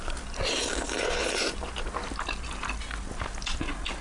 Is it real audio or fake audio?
real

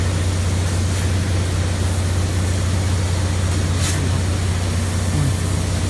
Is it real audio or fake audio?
real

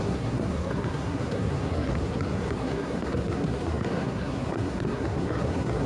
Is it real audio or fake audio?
fake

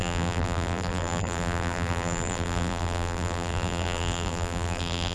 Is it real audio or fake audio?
fake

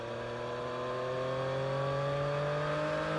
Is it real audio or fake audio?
real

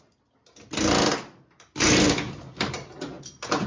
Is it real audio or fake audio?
real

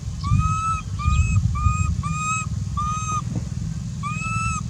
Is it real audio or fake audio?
real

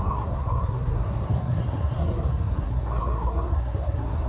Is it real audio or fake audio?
fake